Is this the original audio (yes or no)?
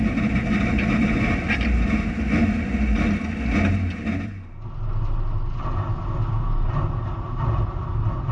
yes